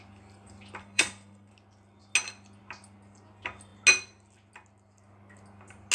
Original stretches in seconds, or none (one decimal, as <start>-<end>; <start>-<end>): 0.0-0.8; 1.5-5.9